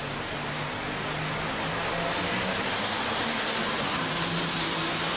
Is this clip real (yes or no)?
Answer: yes